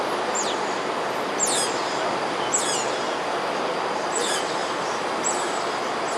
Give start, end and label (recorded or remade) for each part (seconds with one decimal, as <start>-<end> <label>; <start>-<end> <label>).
0.0-4.6 recorded; 4.6-5.5 remade; 5.5-6.2 recorded